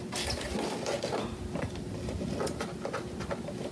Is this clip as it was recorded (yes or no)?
yes